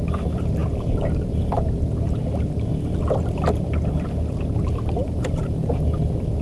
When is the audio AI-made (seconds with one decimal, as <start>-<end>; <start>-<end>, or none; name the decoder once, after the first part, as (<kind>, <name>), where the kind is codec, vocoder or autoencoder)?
5.0-5.7 (vocoder, BigVGAN v2)